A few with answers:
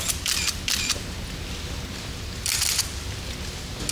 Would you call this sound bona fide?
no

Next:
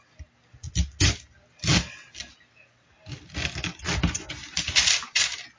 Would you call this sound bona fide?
yes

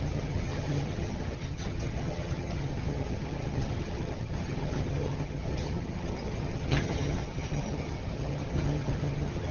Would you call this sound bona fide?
no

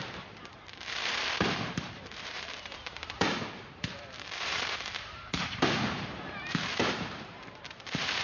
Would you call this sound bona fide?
no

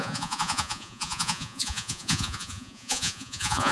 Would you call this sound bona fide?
no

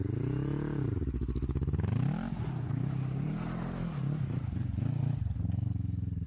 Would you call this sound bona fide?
yes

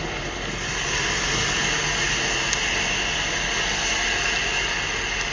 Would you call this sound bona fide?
yes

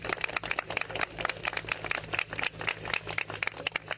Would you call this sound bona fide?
yes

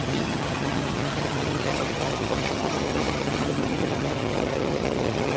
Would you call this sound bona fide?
no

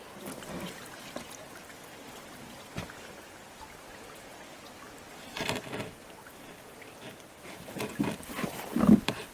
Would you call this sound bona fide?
yes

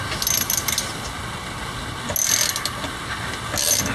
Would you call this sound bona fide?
yes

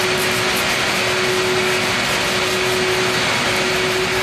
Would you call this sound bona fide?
yes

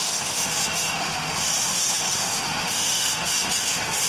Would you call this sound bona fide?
no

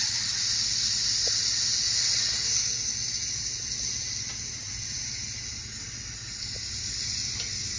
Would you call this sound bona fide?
yes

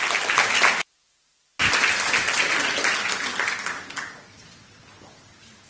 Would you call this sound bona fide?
yes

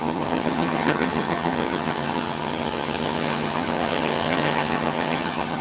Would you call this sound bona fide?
no